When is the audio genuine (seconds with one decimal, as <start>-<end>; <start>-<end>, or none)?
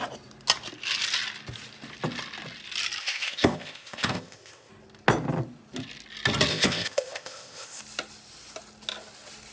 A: 0.0-3.0; 4.7-6.5; 7.8-9.5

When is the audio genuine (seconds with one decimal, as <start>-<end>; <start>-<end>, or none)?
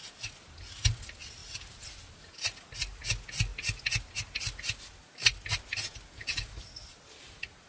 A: 0.0-7.7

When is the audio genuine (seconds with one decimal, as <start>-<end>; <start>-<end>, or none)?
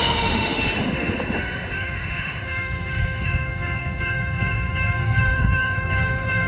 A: none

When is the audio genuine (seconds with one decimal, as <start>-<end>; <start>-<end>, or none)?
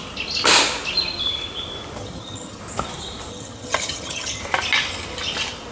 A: 0.0-2.0; 2.6-3.3; 4.4-5.7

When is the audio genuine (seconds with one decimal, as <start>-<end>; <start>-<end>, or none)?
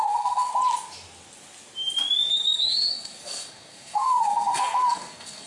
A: 0.5-2.3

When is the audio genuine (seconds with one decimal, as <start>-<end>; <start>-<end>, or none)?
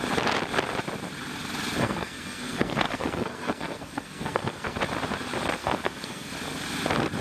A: 0.0-1.8; 4.8-5.6; 6.3-7.2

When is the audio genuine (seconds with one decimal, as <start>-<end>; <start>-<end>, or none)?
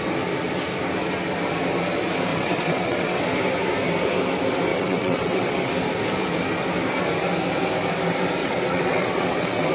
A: 0.0-2.3; 3.2-4.7; 5.7-8.4